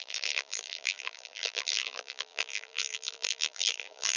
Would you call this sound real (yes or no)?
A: no